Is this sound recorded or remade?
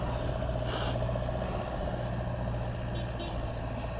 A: recorded